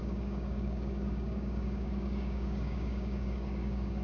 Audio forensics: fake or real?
fake